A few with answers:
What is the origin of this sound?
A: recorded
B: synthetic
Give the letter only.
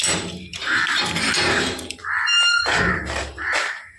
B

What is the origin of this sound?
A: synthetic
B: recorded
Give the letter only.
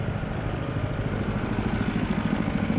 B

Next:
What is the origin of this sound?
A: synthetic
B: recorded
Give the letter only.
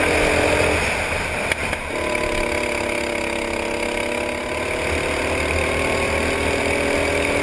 B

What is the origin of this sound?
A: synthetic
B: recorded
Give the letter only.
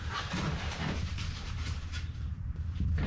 A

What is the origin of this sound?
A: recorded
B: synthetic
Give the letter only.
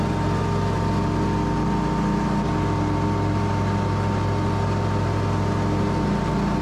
A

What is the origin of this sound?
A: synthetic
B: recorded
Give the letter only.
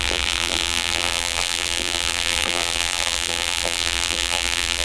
A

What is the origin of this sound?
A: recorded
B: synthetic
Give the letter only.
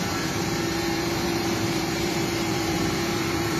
B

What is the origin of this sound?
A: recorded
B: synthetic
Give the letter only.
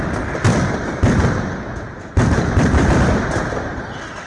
B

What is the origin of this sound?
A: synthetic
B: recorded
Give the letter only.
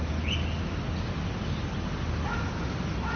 B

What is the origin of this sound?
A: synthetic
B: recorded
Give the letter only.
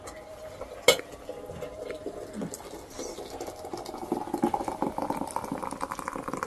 B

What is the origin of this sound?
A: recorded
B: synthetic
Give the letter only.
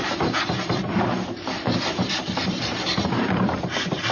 B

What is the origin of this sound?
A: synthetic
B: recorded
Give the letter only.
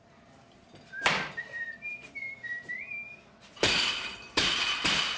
A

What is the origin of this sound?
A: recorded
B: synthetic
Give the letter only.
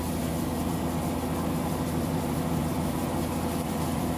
B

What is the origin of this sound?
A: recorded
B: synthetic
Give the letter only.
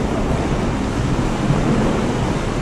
A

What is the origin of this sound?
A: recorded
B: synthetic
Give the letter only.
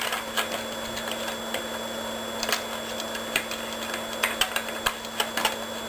A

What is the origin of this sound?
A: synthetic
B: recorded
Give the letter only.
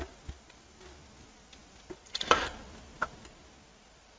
B